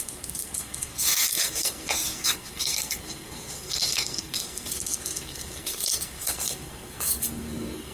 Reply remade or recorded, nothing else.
remade